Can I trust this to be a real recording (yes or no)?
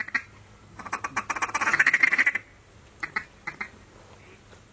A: yes